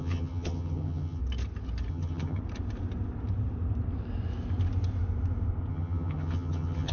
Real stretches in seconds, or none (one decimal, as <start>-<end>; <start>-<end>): 1.2-1.9; 2.4-5.7

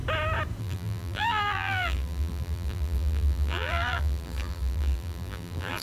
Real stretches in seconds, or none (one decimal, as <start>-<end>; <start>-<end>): 0.0-0.6

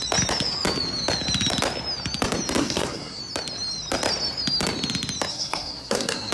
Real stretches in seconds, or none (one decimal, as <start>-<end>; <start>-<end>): 0.0-2.6; 3.2-5.3

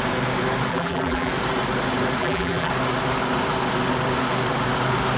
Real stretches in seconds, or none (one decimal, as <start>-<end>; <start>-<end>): 0.0-0.7; 1.3-2.2; 2.7-5.2

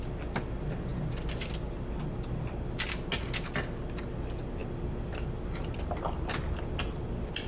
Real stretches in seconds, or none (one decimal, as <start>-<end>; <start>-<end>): 0.0-7.5